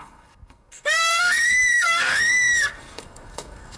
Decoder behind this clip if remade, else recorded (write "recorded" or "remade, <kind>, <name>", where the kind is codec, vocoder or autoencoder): remade, codec, SNAC